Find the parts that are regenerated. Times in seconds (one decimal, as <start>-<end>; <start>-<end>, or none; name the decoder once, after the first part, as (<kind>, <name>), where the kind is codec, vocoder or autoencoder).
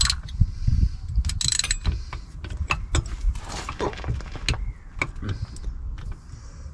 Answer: none